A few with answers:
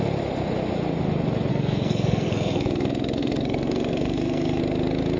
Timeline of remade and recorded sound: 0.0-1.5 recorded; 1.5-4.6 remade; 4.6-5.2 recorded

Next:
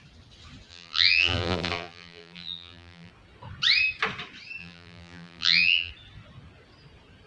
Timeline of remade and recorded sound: 0.0-0.7 recorded; 0.7-3.1 remade; 3.1-4.6 recorded; 4.6-5.9 remade; 5.9-7.3 recorded

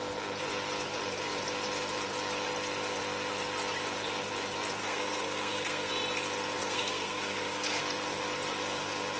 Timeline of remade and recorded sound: 0.0-4.8 recorded; 4.8-5.9 remade; 5.9-6.6 recorded; 6.6-7.8 remade; 7.8-9.2 recorded

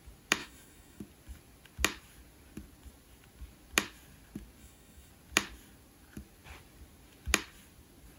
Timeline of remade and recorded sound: 0.0-0.4 recorded; 0.4-1.0 remade; 1.0-4.6 recorded; 4.6-5.1 remade; 5.1-8.2 recorded

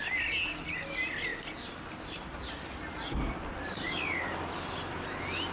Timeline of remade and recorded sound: 0.0-5.5 recorded

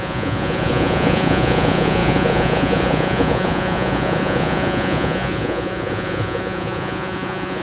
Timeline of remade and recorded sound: 0.0-7.6 remade

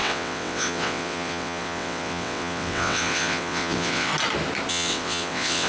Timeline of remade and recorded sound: 0.0-4.1 remade; 4.1-4.7 recorded; 4.7-5.7 remade